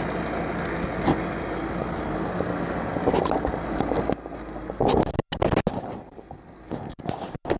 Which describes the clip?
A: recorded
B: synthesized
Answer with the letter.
A